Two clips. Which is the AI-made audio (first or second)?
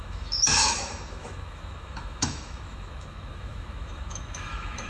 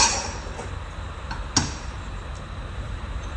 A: first